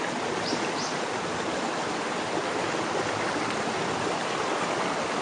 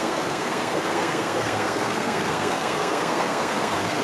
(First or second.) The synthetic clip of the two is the second